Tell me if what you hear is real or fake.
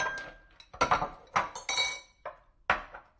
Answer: real